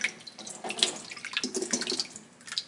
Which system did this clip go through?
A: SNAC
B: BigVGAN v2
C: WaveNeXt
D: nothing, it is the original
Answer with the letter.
D